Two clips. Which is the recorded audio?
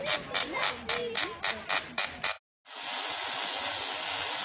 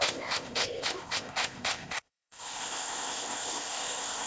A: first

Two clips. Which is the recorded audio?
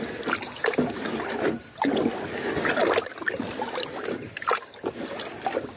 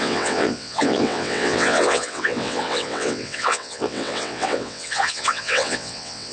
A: first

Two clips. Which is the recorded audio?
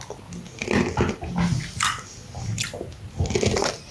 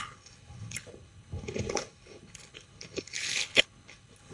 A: first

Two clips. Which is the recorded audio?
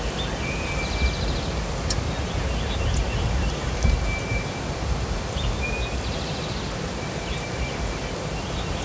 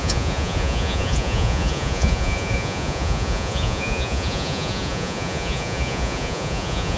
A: first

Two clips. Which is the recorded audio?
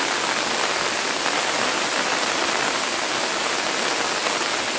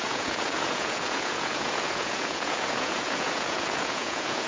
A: first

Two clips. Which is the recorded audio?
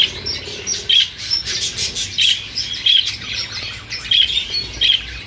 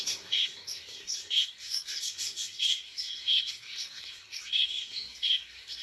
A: first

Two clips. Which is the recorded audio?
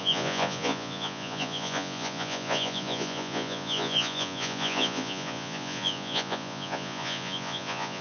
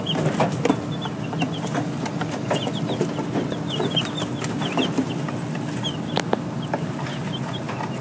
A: second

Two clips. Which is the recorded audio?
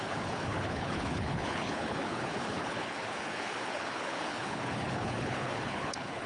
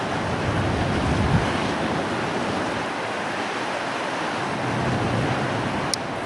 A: second